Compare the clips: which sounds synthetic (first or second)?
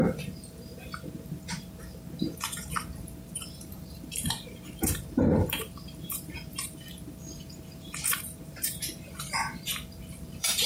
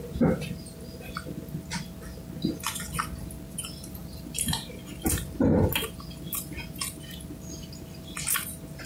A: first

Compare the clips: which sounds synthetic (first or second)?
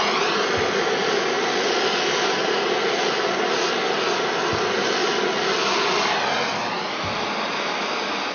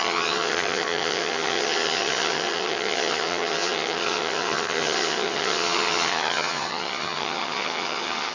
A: second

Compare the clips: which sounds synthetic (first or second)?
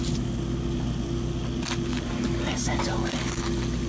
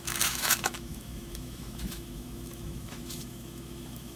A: second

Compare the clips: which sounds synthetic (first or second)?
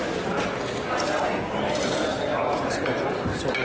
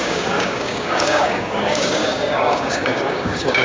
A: second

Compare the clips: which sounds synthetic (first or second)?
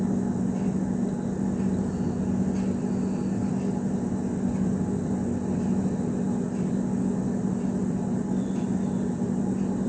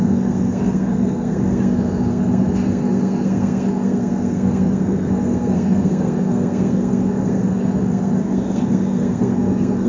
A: second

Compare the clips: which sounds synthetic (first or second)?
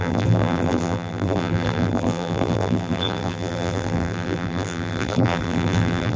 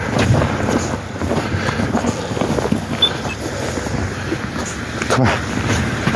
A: first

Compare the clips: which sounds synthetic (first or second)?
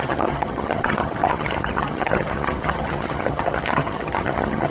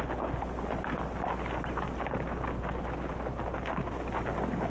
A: first